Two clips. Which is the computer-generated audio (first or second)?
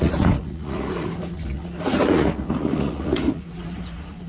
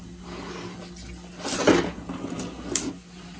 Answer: first